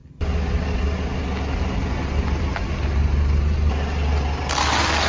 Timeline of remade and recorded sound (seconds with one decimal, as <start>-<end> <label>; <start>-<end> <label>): 0.0-5.1 recorded